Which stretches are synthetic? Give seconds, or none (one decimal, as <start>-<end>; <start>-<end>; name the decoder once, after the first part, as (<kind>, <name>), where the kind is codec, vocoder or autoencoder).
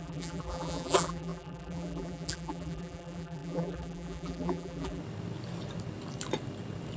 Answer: 0.0-5.0 (vocoder, BigVGAN v2)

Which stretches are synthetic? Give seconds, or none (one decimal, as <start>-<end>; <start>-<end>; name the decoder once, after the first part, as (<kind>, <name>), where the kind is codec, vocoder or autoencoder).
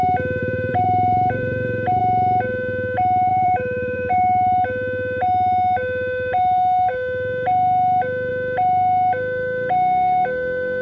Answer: 0.4-2.0 (vocoder, BigVGAN v2); 3.3-4.1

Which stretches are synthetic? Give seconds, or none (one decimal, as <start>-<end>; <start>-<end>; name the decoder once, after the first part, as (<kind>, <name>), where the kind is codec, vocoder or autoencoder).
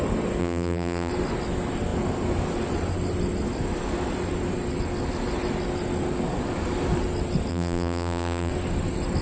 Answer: 0.4-1.1 (vocoder, BigVGAN v2); 7.5-8.5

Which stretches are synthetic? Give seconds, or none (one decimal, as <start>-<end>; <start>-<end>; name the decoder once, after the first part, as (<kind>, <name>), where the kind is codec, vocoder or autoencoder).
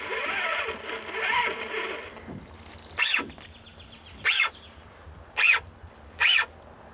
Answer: none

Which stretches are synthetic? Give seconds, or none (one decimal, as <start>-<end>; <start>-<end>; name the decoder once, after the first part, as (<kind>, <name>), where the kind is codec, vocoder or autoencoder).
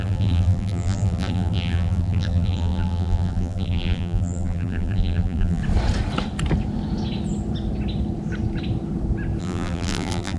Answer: 0.0-5.6 (vocoder, BigVGAN v2); 9.4-10.4